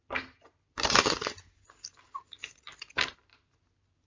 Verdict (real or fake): real